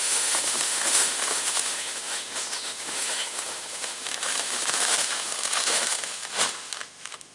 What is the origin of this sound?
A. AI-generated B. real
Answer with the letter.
A